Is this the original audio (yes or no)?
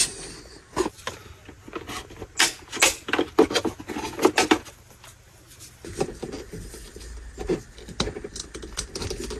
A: yes